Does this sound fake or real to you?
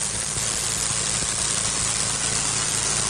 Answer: real